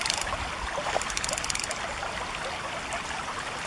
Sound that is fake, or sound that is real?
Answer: real